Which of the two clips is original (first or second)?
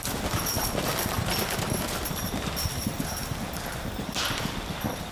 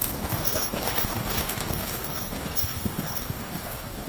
first